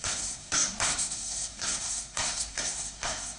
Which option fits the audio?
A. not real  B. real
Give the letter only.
A